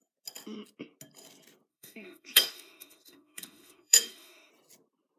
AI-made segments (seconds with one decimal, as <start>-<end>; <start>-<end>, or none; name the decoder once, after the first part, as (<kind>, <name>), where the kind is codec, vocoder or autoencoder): 1.7-4.5 (autoencoder, DAC-VAE)